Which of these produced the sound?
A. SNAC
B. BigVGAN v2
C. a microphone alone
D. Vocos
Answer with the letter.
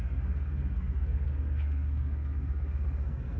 A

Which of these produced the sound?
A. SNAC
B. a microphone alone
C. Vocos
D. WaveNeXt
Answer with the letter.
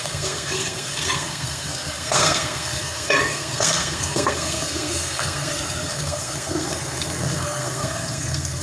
A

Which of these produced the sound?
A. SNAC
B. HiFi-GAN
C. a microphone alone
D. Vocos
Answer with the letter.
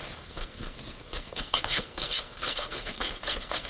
A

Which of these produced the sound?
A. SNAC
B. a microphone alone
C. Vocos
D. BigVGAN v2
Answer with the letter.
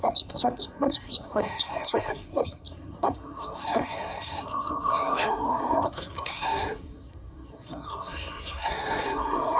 A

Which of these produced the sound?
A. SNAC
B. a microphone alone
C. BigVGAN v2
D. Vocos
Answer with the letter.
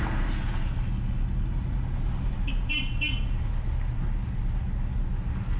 B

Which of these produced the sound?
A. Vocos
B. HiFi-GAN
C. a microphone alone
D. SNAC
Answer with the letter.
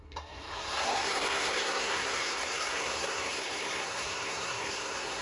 D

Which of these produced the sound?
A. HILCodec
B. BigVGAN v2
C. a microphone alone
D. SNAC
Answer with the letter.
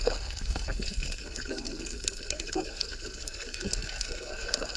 D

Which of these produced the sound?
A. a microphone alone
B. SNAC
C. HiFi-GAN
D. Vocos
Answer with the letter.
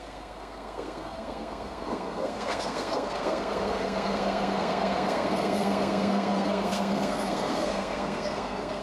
B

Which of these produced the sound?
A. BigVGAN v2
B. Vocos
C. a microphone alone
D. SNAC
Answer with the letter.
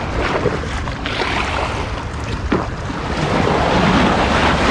C